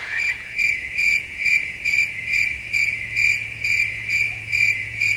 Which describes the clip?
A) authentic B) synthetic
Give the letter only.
B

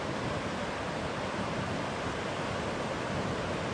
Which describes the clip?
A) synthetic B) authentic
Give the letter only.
B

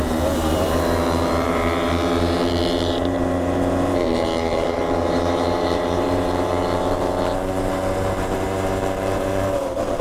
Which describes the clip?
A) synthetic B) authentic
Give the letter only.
A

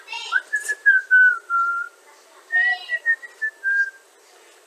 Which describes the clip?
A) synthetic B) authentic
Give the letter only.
B